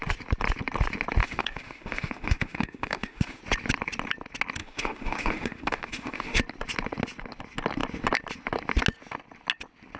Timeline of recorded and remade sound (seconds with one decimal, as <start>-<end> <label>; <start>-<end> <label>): 0.0-1.2 recorded; 1.2-3.4 remade; 3.4-4.6 recorded; 4.6-6.4 remade; 6.4-10.0 recorded